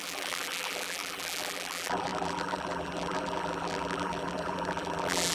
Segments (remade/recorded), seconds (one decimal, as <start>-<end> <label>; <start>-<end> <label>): 0.0-5.3 remade